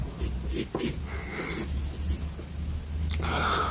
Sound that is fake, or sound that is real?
real